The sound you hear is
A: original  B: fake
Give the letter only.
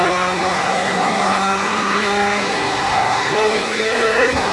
B